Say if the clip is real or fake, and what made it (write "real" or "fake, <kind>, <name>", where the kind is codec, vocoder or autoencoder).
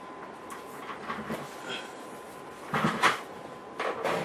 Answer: real